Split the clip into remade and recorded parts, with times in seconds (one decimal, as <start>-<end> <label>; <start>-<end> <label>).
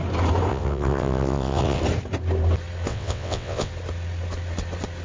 0.0-0.5 recorded; 0.5-1.8 remade; 1.8-2.9 recorded; 2.9-3.7 remade; 3.7-5.0 recorded